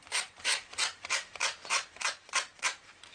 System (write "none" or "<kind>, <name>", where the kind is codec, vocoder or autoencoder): vocoder, BigVGAN v2